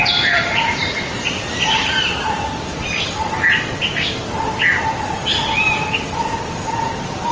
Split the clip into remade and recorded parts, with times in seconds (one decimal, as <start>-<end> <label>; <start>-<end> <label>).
0.0-0.8 remade; 0.8-7.3 recorded